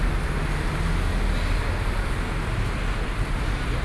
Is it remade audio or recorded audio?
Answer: recorded